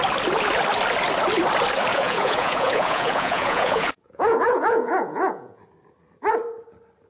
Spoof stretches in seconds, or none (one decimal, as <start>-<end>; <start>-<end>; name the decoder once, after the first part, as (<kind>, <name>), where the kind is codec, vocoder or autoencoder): 1.9-5.6 (vocoder, Vocos)